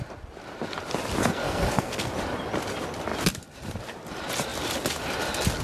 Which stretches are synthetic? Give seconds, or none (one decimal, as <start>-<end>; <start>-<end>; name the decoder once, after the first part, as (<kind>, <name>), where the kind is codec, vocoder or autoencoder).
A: 1.2-2.1 (codec, SNAC)